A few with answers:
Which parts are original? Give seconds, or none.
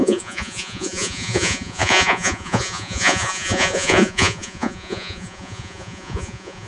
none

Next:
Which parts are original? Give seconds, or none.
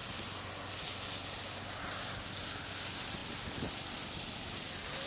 0.0-5.1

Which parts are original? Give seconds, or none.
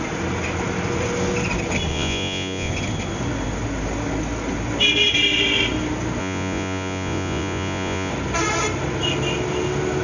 0.0-1.9; 2.7-6.2; 8.1-10.0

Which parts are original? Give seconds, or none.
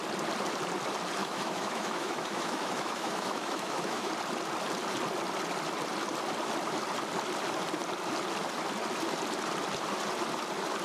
0.0-1.2; 4.1-10.8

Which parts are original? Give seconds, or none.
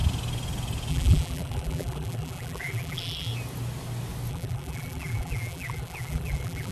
0.0-0.9; 3.3-4.3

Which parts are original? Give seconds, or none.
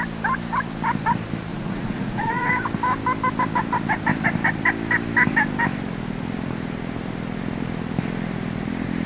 0.0-1.5; 2.5-9.1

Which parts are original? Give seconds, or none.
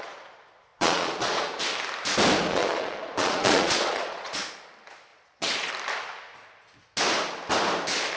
0.0-0.7; 1.6-2.5; 4.4-5.1; 5.7-8.2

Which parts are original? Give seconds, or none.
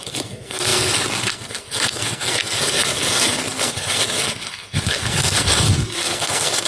none